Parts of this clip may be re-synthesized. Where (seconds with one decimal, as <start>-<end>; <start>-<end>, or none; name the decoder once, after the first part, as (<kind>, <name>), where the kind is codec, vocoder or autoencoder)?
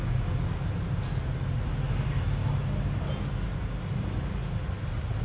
4.4-5.2 (vocoder, BigVGAN v2)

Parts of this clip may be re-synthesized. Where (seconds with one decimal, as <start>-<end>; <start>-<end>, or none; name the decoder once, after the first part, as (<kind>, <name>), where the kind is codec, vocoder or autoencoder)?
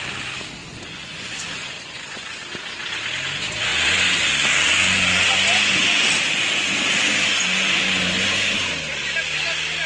0.6-2.4 (vocoder, Vocos); 3.7-5.2; 7.3-7.8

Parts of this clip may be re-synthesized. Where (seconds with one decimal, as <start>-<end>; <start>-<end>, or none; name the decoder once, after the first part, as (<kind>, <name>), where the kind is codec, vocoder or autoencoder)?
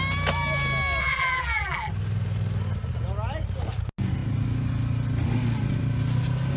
1.0-1.9 (vocoder, BigVGAN v2)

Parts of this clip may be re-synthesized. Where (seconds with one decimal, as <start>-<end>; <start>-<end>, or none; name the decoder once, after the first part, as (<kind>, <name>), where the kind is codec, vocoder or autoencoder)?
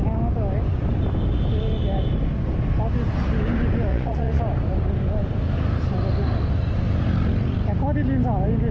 3.9-4.4 (vocoder, Vocos)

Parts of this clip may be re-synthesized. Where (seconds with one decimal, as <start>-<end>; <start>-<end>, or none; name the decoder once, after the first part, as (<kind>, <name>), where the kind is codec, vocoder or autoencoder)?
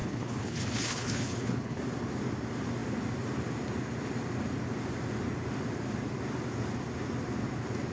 0.0-1.8 (codec, HILCodec)